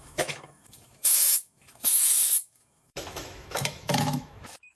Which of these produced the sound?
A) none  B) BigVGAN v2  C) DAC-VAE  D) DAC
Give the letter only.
C